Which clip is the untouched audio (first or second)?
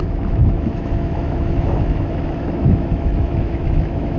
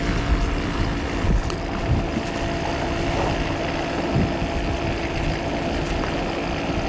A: second